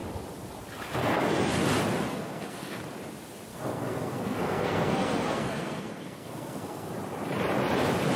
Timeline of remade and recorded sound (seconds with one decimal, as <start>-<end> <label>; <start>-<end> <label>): 0.0-1.0 recorded; 1.0-1.5 remade; 1.5-2.1 recorded; 2.1-2.8 remade; 2.8-3.5 recorded; 3.5-6.9 remade; 6.9-8.2 recorded